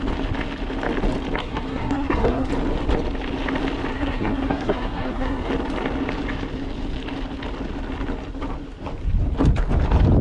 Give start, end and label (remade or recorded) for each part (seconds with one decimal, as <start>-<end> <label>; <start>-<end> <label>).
0.0-1.4 recorded; 1.4-2.5 remade; 2.5-3.9 recorded; 3.9-5.5 remade; 5.5-10.2 recorded